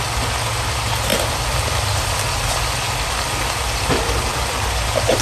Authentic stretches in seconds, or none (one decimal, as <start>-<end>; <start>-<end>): 0.0-4.3